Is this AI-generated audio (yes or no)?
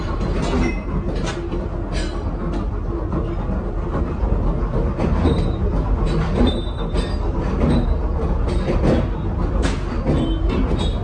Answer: no